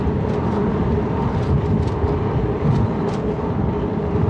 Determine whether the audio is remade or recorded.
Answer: recorded